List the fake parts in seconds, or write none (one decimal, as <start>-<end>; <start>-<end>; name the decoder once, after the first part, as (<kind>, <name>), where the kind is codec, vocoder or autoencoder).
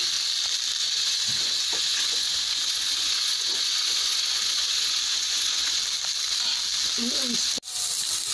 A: 0.8-5.8 (vocoder, Vocos)